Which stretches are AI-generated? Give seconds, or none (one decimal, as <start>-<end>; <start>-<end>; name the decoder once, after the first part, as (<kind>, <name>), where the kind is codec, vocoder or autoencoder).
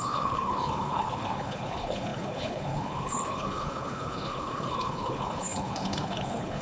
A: 0.0-6.6 (codec, HILCodec)